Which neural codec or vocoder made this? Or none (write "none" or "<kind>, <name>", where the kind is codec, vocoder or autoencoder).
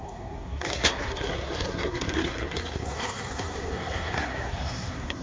codec, SNAC